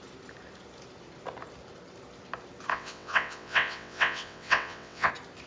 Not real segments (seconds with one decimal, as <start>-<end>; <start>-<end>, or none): 2.7-5.1